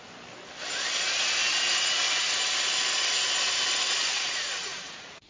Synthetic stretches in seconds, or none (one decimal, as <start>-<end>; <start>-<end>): 4.1-5.3